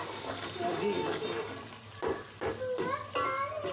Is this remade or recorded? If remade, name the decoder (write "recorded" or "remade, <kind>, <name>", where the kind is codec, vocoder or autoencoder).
recorded